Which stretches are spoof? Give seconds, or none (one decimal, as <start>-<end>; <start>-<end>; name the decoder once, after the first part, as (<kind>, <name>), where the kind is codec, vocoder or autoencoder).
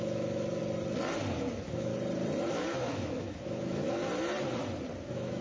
0.0-0.6 (autoencoder, DAC-VAE); 1.5-1.9; 2.5-4.0; 5.0-5.4